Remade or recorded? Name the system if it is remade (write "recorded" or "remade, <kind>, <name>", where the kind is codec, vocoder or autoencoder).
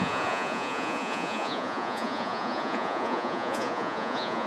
remade, vocoder, Vocos